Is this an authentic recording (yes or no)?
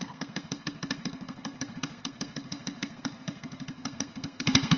no